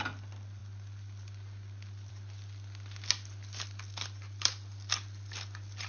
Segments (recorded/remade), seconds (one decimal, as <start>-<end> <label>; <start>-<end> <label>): 0.0-5.9 recorded